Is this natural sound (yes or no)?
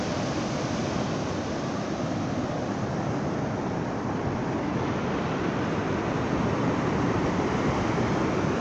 no